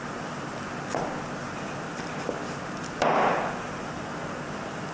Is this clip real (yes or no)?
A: yes